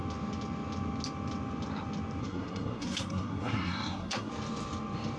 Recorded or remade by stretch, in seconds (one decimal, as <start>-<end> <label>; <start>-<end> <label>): 0.0-2.2 recorded; 2.2-4.3 remade; 4.3-5.2 recorded